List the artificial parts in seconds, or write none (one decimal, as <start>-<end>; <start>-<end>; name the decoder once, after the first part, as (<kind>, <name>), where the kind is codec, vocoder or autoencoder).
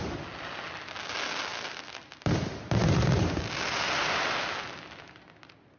none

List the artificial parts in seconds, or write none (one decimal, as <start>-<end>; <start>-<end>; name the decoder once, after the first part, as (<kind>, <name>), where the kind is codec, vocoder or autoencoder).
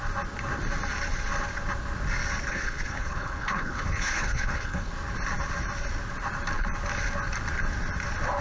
2.5-4.9 (codec, HILCodec)